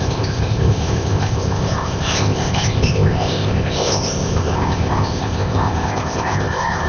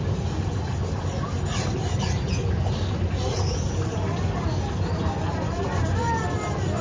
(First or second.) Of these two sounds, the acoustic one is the second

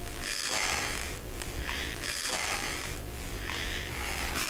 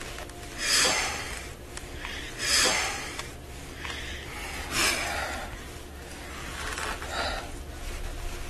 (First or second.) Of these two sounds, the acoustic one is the second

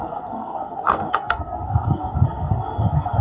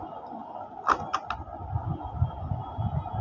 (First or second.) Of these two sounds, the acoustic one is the second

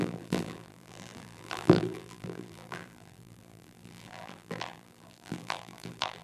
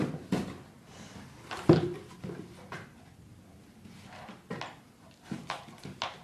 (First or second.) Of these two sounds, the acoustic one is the second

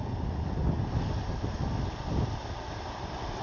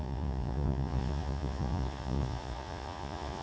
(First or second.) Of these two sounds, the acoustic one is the first